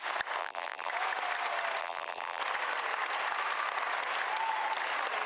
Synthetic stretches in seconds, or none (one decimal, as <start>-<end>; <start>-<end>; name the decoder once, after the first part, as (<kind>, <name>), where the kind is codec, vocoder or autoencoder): 0.4-0.9 (vocoder, BigVGAN v2); 1.8-2.4